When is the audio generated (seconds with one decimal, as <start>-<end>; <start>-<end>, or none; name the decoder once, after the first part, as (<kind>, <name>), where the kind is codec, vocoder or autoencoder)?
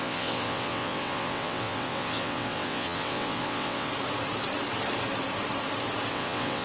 0.0-3.9 (vocoder, WaveNeXt); 6.1-6.6